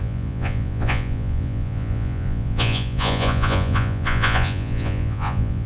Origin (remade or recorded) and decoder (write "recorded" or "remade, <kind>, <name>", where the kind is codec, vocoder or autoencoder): remade, vocoder, Vocos